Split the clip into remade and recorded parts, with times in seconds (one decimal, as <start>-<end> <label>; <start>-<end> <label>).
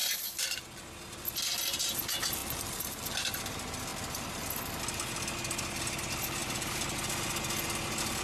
0.0-0.6 remade; 0.6-6.4 recorded; 6.4-7.3 remade; 7.3-8.2 recorded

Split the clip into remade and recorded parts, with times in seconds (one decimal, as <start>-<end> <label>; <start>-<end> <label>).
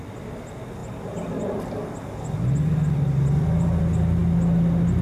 0.0-5.0 recorded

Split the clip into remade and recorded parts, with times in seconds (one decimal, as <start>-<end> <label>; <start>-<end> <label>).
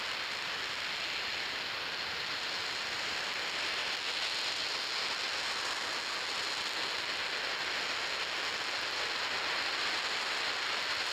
0.0-11.1 recorded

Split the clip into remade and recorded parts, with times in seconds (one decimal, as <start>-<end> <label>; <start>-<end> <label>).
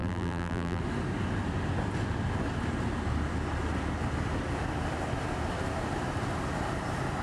0.0-0.8 remade; 0.8-7.2 recorded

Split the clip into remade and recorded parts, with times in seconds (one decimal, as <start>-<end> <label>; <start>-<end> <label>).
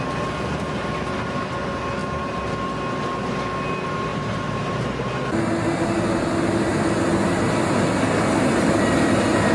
0.0-2.0 recorded; 2.0-2.5 remade; 2.5-4.1 recorded; 4.1-5.1 remade; 5.1-6.7 recorded; 6.7-7.4 remade; 7.4-9.5 recorded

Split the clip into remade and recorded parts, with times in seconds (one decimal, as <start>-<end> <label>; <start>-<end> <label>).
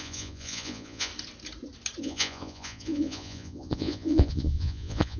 0.0-1.1 remade; 1.1-2.0 recorded; 2.0-5.2 remade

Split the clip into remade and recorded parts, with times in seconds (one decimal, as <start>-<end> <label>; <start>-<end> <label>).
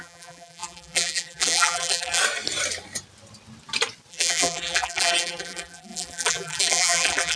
0.0-2.2 remade; 2.2-4.1 recorded; 4.1-7.4 remade